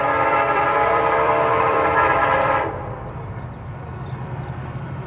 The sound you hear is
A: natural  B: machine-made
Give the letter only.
B